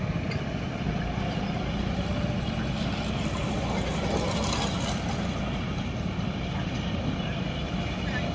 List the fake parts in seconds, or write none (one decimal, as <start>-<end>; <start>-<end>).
0.0-2.1; 5.8-8.3